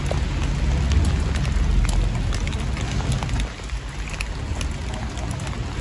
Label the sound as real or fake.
real